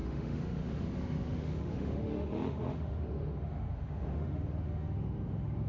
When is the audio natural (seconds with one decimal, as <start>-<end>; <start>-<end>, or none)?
none